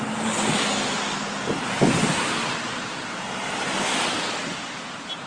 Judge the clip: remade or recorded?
recorded